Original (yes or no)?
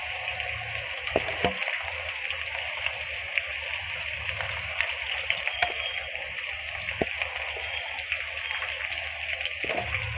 yes